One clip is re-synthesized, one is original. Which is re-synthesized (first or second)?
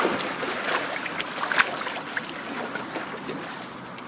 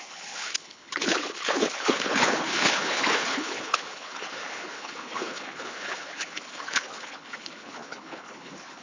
second